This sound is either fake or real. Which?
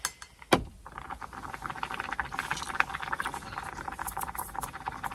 real